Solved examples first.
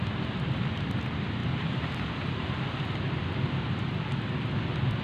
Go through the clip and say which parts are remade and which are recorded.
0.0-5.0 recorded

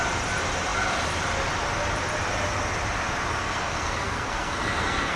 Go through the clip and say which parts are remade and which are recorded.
0.0-3.3 recorded; 3.3-5.2 remade